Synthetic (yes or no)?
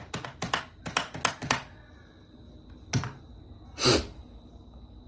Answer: no